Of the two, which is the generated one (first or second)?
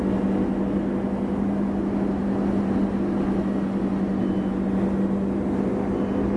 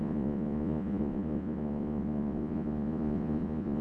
second